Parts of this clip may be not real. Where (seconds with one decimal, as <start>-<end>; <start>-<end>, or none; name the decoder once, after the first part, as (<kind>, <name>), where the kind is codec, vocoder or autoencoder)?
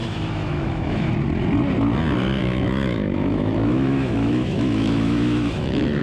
0.0-1.1 (autoencoder, DAC-VAE); 2.4-6.0